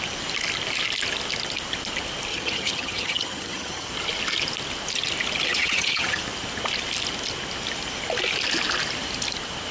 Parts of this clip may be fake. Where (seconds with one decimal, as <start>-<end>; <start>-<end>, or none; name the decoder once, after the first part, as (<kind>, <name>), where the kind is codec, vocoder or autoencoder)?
2.3-3.9 (vocoder, HiFi-GAN); 5.5-6.2